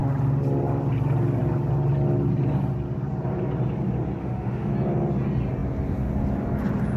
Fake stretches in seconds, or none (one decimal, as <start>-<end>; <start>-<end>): 4.2-4.7